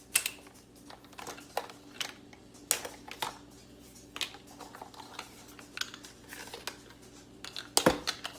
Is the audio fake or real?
real